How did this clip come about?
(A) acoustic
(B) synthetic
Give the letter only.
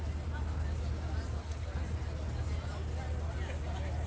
A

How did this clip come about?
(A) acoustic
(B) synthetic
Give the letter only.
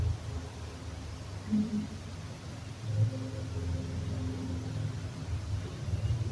A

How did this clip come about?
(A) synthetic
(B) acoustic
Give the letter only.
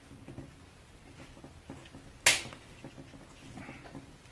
B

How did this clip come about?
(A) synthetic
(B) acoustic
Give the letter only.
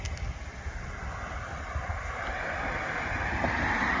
B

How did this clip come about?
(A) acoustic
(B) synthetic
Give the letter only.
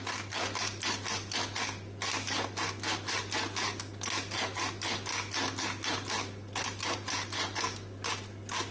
A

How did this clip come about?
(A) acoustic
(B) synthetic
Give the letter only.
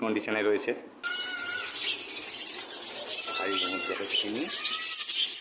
A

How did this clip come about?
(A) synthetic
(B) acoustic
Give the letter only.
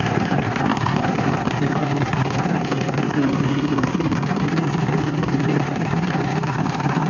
A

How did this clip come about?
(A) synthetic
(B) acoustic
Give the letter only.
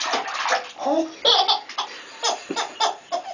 B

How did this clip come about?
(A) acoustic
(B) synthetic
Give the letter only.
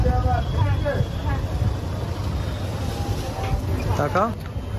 A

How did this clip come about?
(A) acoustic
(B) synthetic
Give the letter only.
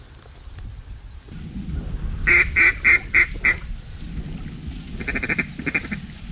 A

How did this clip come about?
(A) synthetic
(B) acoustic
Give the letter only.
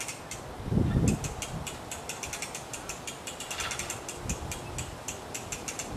B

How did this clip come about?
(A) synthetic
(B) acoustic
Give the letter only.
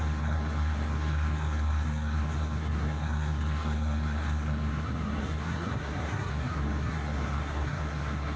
A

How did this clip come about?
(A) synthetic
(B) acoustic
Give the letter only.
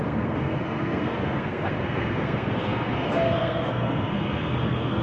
A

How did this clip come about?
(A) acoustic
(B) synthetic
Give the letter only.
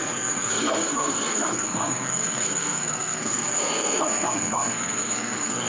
B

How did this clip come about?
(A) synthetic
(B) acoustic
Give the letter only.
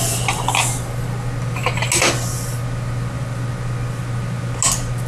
B